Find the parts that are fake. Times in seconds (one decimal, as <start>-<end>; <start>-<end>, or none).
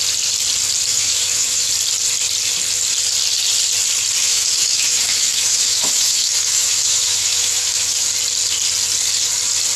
0.9-1.7; 4.2-8.1